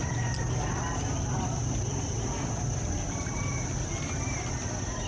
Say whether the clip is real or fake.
real